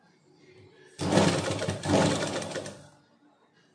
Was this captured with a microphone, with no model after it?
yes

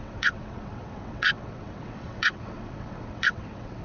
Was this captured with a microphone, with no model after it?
no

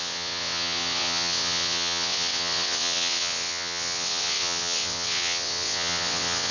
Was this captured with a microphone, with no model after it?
no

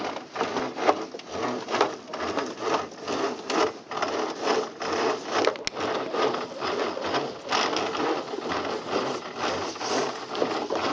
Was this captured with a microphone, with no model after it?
yes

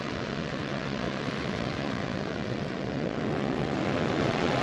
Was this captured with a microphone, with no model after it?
no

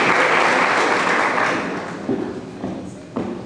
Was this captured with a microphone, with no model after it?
yes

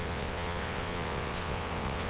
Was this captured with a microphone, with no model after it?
no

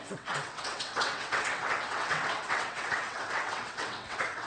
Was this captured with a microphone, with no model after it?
no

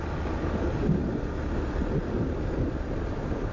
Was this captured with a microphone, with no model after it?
yes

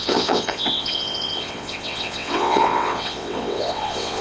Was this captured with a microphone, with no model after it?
no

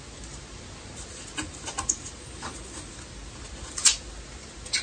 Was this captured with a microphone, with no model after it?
yes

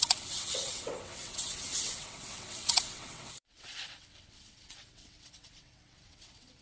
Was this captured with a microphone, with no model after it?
no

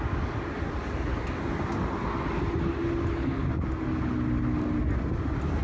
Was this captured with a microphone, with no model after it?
yes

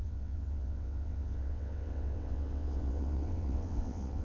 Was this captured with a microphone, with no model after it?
no